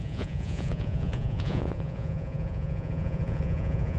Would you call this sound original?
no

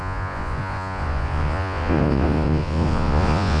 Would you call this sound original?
no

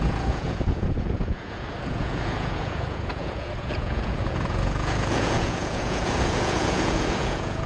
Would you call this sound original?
no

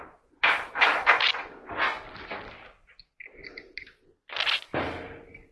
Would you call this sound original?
yes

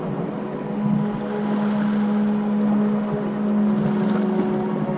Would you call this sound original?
yes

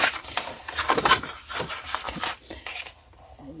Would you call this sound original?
yes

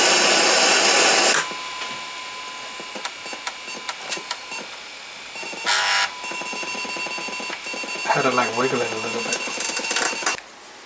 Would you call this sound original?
yes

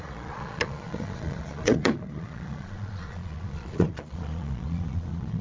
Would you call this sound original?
no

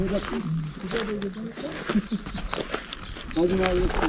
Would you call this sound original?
yes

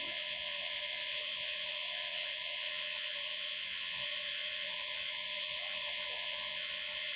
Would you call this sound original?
no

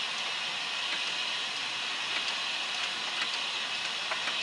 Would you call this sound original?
yes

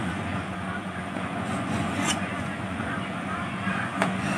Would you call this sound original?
no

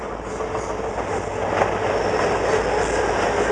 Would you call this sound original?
yes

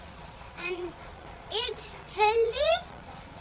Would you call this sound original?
no